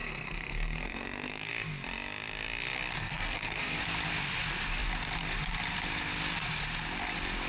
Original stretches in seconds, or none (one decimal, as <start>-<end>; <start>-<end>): 1.5-3.0; 3.8-7.5